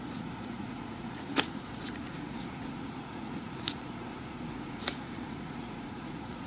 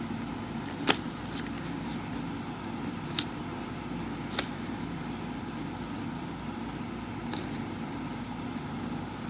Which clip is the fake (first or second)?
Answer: first